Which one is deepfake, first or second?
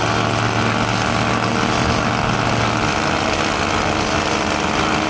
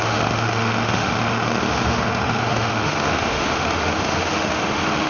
second